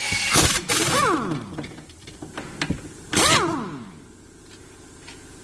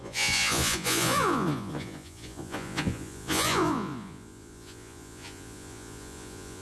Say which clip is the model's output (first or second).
second